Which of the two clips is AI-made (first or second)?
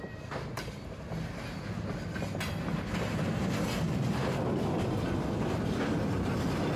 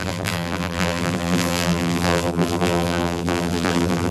second